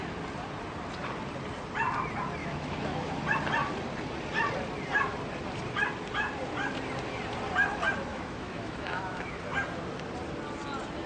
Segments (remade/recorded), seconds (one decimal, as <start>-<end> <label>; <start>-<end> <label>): 0.0-2.4 recorded; 2.4-3.2 remade; 3.2-8.1 recorded; 8.1-9.4 remade; 9.4-11.1 recorded